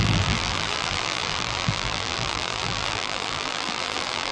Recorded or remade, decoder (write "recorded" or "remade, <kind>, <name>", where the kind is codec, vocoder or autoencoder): remade, vocoder, BigVGAN v2